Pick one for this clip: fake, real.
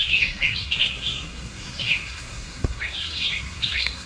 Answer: fake